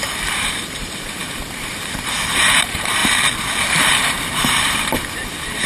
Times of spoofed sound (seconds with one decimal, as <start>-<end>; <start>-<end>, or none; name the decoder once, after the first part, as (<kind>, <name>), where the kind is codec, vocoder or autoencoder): 0.0-3.0 (vocoder, BigVGAN v2); 3.8-5.7